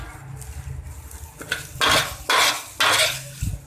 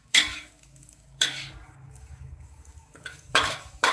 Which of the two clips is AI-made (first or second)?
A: second